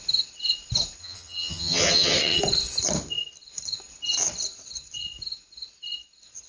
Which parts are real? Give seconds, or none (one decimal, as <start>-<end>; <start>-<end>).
0.0-1.0; 2.4-6.5